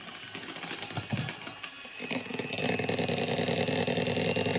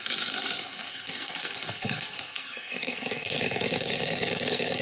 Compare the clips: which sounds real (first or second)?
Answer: first